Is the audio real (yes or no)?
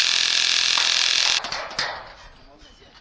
yes